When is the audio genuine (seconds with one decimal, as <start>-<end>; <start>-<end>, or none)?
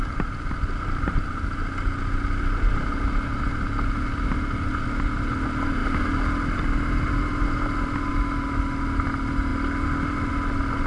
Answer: 0.0-10.9